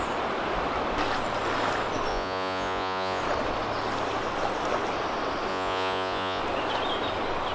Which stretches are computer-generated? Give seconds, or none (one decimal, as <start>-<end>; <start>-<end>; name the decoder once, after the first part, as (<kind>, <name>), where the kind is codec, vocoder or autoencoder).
2.1-3.2 (vocoder, Vocos); 5.5-6.4